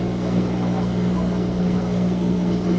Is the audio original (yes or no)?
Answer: no